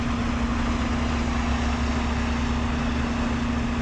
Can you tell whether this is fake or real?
real